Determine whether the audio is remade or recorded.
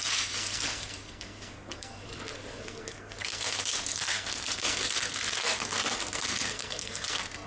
remade